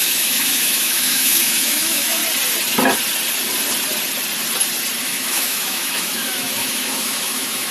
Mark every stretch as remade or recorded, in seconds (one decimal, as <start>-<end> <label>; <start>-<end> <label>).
0.0-2.2 remade; 2.2-5.0 recorded; 5.0-7.7 remade